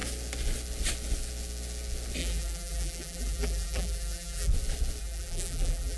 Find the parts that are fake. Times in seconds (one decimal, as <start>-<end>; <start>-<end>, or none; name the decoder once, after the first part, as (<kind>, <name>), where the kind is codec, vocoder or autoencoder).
2.2-4.5 (vocoder, BigVGAN v2); 5.0-6.0